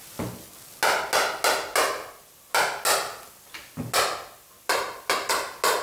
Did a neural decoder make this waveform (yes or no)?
no